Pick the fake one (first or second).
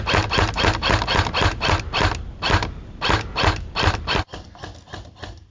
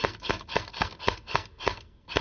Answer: second